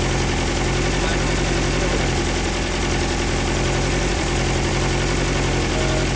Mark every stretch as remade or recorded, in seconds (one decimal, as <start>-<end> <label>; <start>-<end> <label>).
0.0-1.1 recorded; 1.1-4.7 remade; 4.7-6.2 recorded

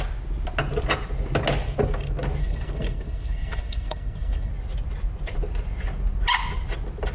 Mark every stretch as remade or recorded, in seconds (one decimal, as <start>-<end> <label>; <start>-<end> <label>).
0.0-2.4 recorded; 2.4-4.5 remade; 4.5-7.1 recorded

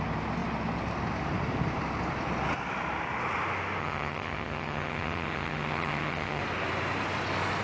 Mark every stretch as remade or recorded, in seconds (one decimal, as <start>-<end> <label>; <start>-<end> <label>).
0.0-3.8 recorded; 3.8-6.4 remade; 6.4-7.6 recorded

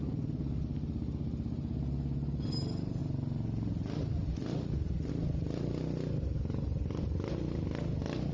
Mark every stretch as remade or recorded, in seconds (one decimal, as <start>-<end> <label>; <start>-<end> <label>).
0.0-3.0 recorded; 3.0-5.1 remade; 5.1-8.3 recorded

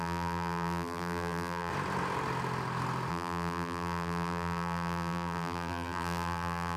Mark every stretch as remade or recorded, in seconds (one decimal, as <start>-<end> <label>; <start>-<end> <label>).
0.0-1.7 remade; 1.7-3.1 recorded; 3.1-6.8 remade

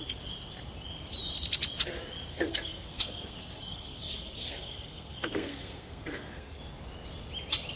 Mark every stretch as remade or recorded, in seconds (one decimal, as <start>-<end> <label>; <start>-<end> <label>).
0.0-2.3 recorded; 2.3-6.6 remade; 6.6-7.8 recorded

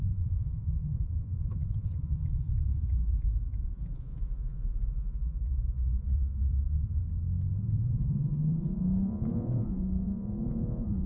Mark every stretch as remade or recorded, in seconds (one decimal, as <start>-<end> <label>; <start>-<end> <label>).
0.0-7.0 remade; 7.0-7.6 recorded; 7.6-11.1 remade